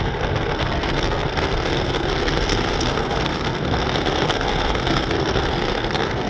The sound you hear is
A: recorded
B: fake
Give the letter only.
B